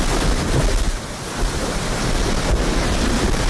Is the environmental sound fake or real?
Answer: real